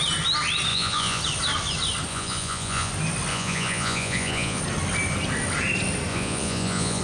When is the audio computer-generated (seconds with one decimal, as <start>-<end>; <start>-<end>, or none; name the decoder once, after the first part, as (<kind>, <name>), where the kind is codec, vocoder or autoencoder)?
0.7-1.2 (vocoder, Vocos); 2.1-2.9; 3.3-4.6; 6.1-7.0